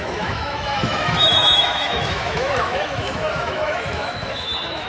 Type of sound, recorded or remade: remade